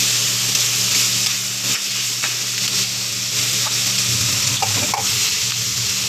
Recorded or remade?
recorded